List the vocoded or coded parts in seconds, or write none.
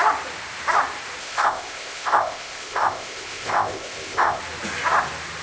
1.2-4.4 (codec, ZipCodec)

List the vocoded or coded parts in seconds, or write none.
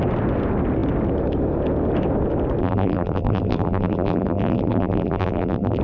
2.6-5.8 (vocoder, BigVGAN v2)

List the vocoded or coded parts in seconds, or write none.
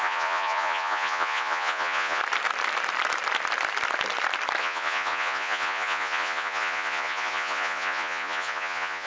0.0-2.2 (vocoder, Vocos); 4.6-9.1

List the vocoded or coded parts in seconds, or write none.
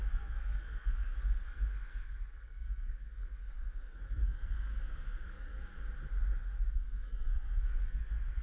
0.0-5.6 (codec, SNAC); 6.7-8.4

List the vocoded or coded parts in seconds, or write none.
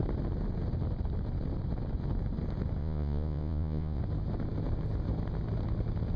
2.8-4.0 (vocoder, Vocos)